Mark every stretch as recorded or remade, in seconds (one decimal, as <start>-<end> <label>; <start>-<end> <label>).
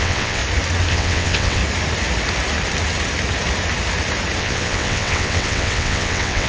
0.0-0.4 remade; 0.4-0.9 recorded; 0.9-1.6 remade; 1.6-4.4 recorded; 4.4-6.5 remade